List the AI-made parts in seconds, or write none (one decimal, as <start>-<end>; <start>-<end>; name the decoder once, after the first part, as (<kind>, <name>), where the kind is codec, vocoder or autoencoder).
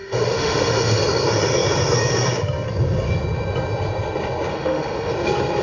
0.0-1.0 (autoencoder, DAC-VAE); 4.5-5.1